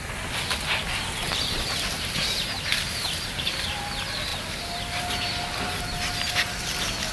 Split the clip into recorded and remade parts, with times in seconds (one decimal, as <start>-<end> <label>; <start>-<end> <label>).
0.0-2.7 recorded; 2.7-3.8 remade; 3.8-7.1 recorded